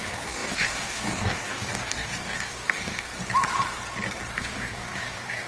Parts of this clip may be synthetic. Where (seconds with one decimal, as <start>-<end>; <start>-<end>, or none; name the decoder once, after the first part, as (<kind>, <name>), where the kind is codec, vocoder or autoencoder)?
0.0-3.1 (codec, DAC); 4.3-5.5